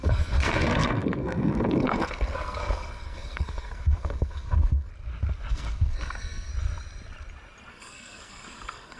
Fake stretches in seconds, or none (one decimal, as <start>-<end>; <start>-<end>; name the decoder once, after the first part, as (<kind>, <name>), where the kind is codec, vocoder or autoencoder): 0.0-4.9 (codec, SNAC); 5.5-6.5; 7.7-9.0